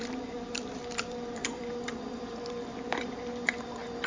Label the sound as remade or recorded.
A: remade